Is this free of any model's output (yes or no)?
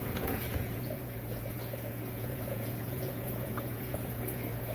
no